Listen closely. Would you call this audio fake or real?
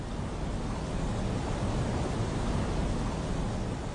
real